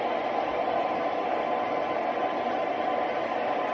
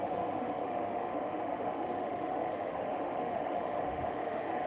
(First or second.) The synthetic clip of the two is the second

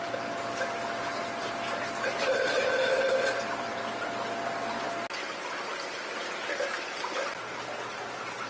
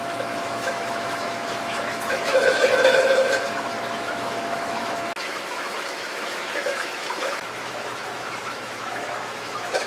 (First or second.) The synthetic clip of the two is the second